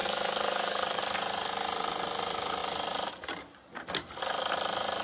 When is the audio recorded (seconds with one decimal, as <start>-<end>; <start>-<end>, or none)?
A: 1.0-5.0